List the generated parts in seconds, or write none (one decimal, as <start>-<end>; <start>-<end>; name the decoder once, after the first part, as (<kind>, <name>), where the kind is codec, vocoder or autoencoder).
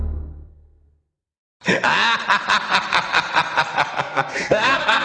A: 0.0-1.4 (codec, SNAC); 4.0-5.0